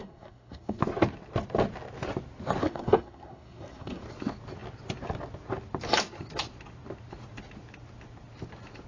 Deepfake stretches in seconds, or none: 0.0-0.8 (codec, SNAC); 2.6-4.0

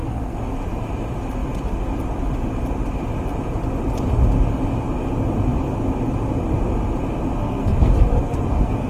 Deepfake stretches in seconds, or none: 0.0-0.5 (codec, SNAC); 7.4-8.9

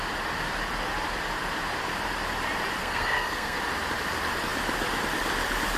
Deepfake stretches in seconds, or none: 2.8-3.6 (codec, SNAC)